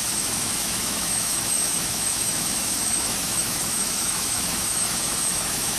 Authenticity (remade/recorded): remade